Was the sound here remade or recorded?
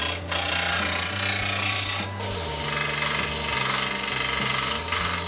recorded